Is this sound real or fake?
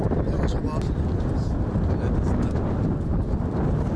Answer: real